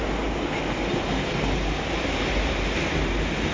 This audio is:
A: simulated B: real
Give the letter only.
B